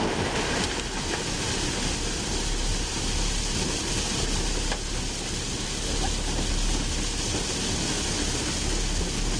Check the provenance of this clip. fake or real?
real